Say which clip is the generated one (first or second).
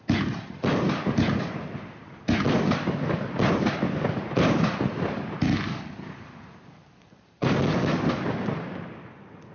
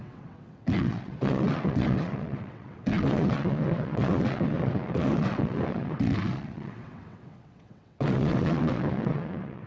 second